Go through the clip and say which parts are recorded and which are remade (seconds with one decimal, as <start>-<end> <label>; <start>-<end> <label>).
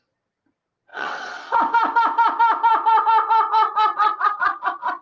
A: 0.0-0.9 recorded; 0.9-1.6 remade; 1.6-5.0 recorded